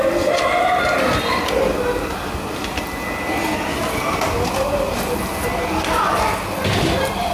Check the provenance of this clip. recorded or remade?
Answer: recorded